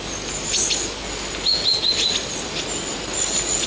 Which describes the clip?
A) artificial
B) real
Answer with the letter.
B